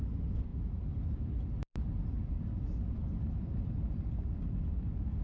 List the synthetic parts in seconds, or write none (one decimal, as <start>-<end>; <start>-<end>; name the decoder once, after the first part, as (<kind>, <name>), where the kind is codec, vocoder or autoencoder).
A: 0.0-5.2 (vocoder, BigVGAN v2)